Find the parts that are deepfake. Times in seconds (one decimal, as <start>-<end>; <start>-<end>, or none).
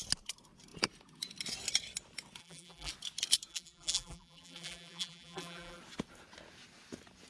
2.4-2.9; 3.5-5.8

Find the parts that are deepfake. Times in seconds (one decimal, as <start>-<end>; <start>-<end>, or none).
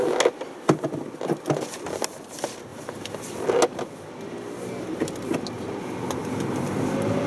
2.7-3.5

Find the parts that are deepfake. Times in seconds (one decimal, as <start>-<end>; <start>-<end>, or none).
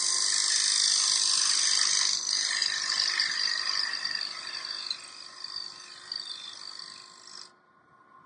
none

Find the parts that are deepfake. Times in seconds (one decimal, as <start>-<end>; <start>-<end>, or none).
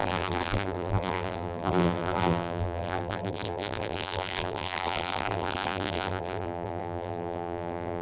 0.0-8.0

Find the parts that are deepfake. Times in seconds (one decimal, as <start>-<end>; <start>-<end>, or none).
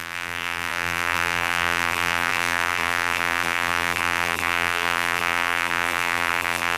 0.0-6.8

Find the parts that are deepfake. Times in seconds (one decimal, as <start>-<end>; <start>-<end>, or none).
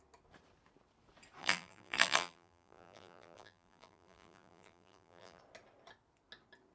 1.4-5.4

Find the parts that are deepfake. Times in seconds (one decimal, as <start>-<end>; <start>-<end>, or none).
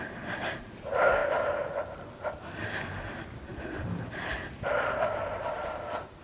none